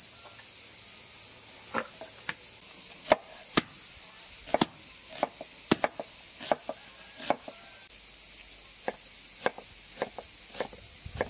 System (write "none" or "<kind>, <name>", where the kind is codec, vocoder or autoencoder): none